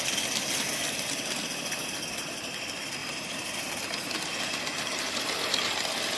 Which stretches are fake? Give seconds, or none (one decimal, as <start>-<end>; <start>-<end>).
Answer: 3.0-3.6